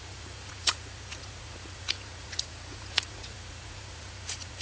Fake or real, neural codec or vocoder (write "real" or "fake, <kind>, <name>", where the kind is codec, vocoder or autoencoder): fake, vocoder, Vocos